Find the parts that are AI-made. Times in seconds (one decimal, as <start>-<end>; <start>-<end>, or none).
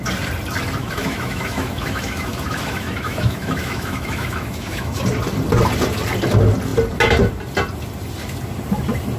0.8-5.0